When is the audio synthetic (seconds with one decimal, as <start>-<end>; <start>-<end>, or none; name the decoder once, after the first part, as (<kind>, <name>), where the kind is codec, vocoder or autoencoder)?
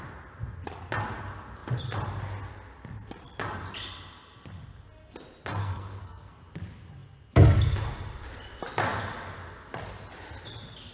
5.6-6.4 (codec, SNAC)